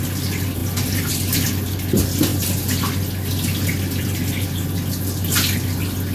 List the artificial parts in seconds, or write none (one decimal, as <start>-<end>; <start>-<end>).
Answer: none